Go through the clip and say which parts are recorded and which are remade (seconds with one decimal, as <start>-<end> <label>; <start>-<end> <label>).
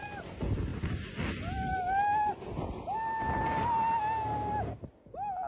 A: 0.0-5.5 recorded